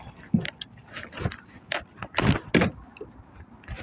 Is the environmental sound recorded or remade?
recorded